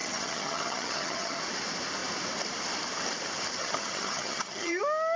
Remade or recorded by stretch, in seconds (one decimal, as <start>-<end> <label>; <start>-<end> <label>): 0.0-1.4 remade; 1.4-3.6 recorded; 3.6-4.8 remade; 4.8-5.2 recorded